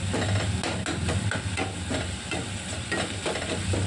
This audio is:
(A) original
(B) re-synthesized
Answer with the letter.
A